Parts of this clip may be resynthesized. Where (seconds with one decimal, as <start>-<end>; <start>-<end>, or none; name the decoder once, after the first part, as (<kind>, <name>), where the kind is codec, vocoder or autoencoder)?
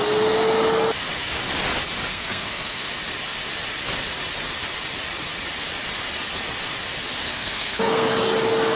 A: 2.1-2.9 (codec, SNAC); 7.2-8.1